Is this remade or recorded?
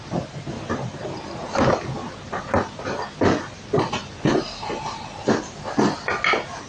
recorded